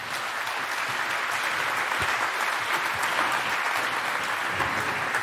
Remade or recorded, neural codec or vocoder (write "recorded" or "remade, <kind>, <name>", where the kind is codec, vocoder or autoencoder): recorded